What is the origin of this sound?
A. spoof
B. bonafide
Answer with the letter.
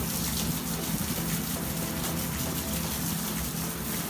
B